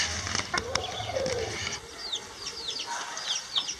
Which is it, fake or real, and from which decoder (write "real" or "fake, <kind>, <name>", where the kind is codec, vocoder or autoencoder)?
real